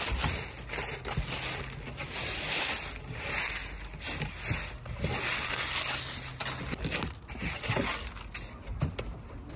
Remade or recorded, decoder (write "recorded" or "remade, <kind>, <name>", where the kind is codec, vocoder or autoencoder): recorded